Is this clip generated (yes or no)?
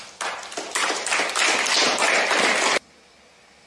yes